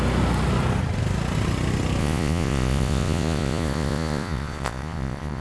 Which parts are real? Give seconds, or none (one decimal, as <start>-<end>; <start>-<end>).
0.0-2.0